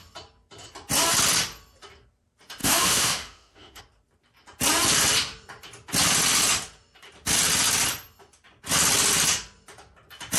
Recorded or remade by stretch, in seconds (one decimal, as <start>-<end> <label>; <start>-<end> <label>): 0.0-2.6 recorded; 2.6-3.8 remade; 3.8-10.4 recorded